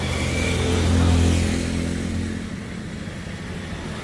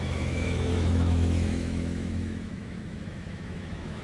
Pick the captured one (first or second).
first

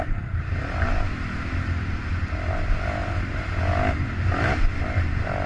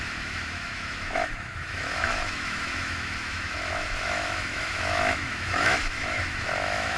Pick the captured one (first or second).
first